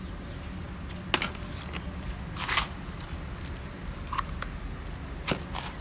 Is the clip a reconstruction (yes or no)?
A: no